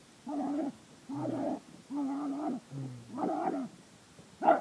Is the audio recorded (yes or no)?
no